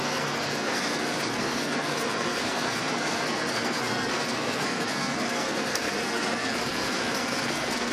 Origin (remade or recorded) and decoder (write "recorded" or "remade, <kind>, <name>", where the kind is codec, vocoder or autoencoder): remade, codec, SNAC